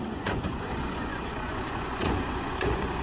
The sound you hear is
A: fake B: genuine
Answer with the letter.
A